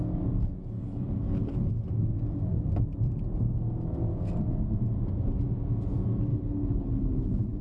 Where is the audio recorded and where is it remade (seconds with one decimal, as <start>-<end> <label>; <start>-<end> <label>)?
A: 0.0-0.8 recorded; 0.8-1.7 remade; 1.7-6.3 recorded; 6.3-7.6 remade